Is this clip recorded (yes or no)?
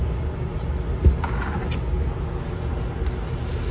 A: yes